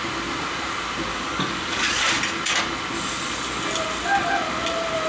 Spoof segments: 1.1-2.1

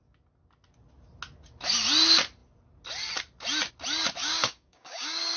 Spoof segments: 4.2-5.4

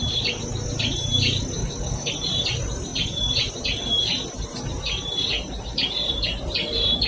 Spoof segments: 1.6-2.1

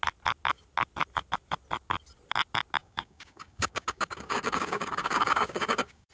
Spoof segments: 2.8-6.1

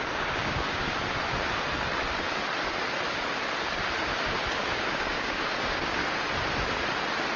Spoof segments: 0.0-0.8; 4.6-6.0

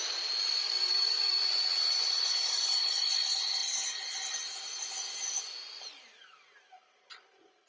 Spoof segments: 0.6-1.4